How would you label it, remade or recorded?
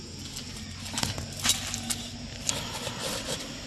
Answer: recorded